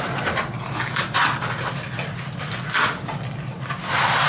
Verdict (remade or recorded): recorded